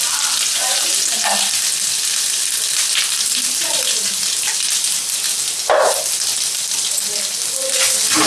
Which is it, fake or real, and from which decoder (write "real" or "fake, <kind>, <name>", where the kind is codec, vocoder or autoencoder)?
real